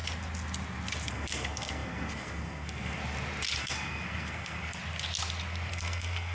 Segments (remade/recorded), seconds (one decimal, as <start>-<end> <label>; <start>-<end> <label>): 0.0-1.1 recorded; 1.1-3.0 remade; 3.0-3.6 recorded; 3.6-4.8 remade; 4.8-5.7 recorded; 5.7-6.3 remade